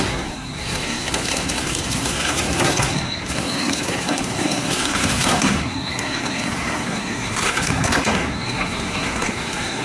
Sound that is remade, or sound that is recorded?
remade